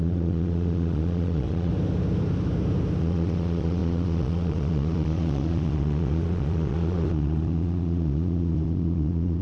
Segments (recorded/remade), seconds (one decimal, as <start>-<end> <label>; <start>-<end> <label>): 0.0-1.7 remade; 1.7-3.0 recorded; 3.0-9.4 remade